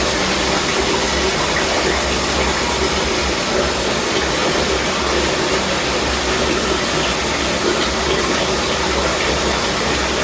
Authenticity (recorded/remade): recorded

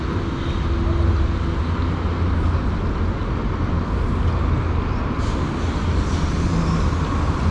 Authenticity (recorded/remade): recorded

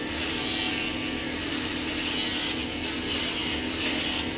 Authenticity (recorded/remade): recorded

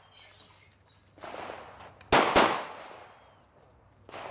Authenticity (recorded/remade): recorded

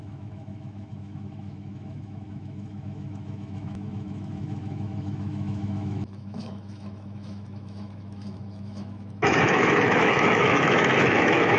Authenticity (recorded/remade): remade